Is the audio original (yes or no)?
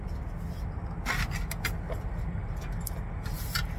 yes